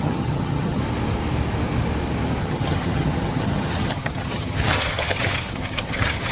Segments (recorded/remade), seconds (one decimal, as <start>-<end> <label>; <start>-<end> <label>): 0.0-0.8 remade; 0.8-2.4 recorded; 2.4-6.3 remade